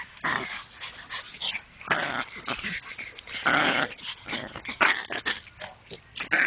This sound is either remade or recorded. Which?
recorded